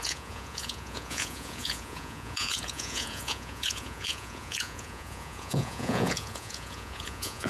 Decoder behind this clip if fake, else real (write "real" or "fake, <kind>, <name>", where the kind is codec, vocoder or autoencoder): fake, vocoder, Vocos